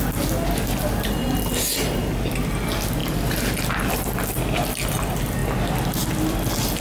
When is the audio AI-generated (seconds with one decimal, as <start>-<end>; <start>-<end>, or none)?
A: none